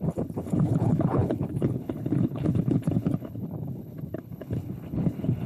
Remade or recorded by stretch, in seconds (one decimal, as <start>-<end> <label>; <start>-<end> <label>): 0.0-5.5 remade